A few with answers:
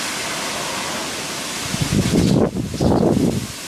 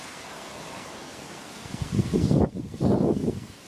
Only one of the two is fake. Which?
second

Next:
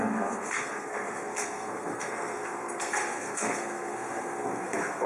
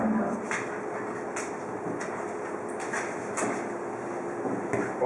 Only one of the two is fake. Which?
first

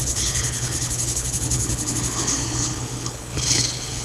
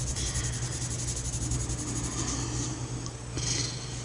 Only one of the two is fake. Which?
first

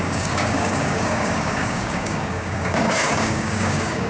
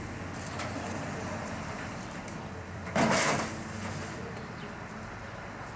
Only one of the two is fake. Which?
first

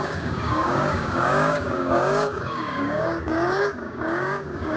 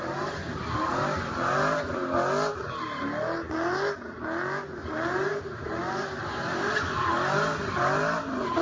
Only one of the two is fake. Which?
first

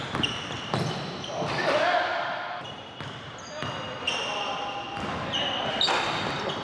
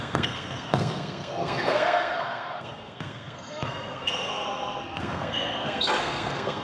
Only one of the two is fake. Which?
second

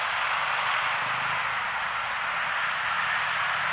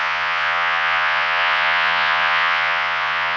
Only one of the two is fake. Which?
second